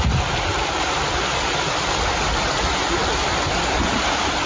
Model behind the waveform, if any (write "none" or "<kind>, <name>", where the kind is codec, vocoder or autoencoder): vocoder, BigVGAN v2